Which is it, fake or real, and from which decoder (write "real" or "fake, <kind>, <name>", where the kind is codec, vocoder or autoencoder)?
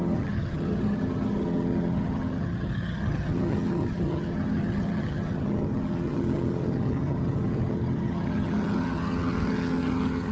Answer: fake, vocoder, HiFi-GAN